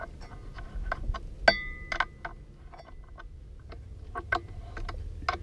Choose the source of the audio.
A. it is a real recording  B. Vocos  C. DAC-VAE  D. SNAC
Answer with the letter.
A